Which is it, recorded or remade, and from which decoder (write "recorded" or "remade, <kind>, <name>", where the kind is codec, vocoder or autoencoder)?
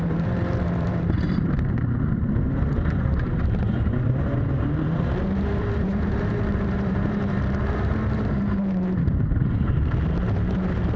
remade, vocoder, BigVGAN v2